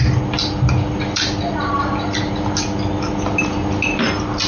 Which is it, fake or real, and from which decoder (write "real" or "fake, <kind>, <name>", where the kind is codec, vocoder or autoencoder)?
real